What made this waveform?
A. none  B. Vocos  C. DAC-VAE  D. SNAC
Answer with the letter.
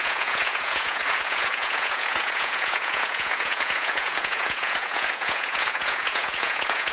B